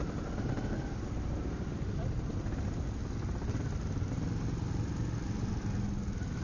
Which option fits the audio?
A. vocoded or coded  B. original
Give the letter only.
B